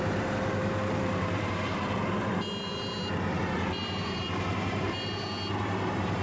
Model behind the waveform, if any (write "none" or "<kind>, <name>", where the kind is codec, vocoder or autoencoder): vocoder, BigVGAN v2